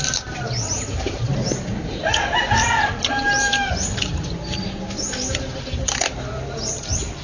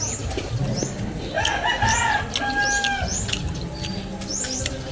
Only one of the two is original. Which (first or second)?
second